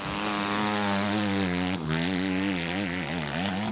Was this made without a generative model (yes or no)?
yes